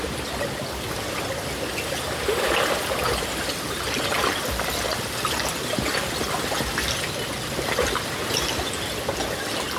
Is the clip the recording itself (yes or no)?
yes